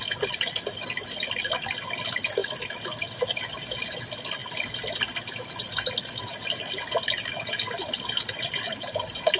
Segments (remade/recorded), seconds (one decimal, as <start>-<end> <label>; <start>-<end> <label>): 0.0-9.4 recorded